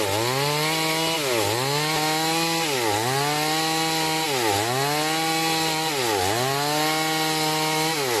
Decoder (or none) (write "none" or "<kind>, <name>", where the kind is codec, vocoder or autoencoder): none